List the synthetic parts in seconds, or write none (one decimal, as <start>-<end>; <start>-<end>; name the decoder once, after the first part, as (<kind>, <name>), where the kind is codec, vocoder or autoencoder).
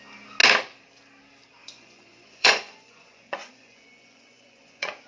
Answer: 1.6-5.1 (vocoder, Vocos)